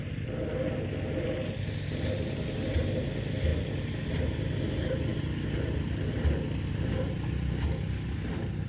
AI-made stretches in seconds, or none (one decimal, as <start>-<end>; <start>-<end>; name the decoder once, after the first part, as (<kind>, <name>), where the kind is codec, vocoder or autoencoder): none